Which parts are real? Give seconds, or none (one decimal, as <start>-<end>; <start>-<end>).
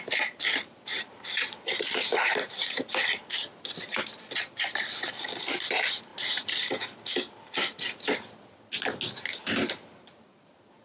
3.2-4.4; 6.1-9.7